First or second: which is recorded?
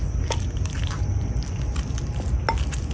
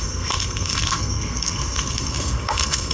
first